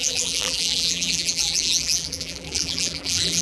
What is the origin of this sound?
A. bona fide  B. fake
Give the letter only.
B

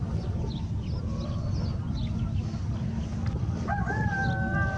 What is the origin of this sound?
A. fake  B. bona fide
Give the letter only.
B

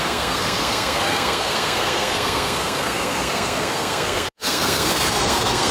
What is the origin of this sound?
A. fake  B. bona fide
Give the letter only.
A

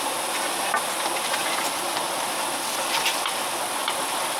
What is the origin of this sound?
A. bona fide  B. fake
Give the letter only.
A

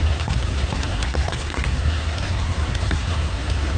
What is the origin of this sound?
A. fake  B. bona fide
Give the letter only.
A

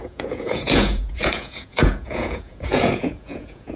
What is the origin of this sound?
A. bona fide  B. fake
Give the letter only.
B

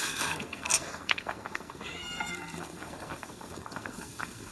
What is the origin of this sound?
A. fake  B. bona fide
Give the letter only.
A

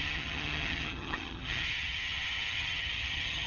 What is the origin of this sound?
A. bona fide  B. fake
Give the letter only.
B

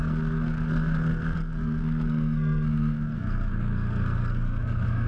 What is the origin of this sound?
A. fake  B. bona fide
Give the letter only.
A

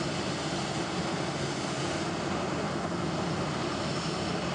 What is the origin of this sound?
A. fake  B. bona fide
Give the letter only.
B